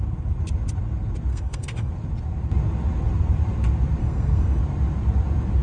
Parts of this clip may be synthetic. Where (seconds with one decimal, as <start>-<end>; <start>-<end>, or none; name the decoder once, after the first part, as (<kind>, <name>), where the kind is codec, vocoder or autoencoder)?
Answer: 1.3-1.9 (codec, SNAC); 4.0-4.6